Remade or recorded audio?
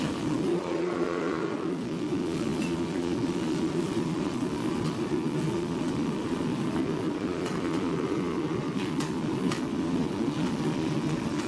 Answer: remade